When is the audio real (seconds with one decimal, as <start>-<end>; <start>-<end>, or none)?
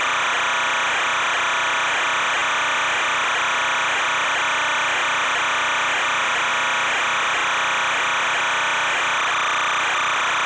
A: 0.0-10.5